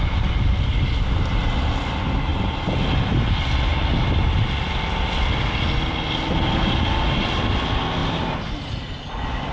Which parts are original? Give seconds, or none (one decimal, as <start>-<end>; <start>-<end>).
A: 0.0-8.0; 8.7-9.5